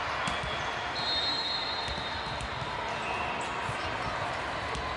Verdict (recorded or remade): recorded